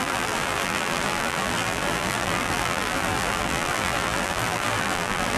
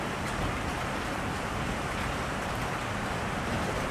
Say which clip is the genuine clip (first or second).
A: second